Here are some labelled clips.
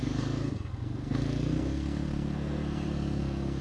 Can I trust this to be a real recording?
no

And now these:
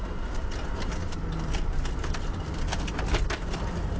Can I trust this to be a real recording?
yes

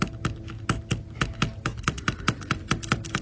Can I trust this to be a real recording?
yes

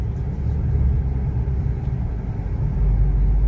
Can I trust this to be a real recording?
yes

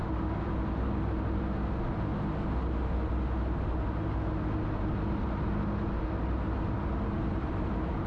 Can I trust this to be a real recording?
yes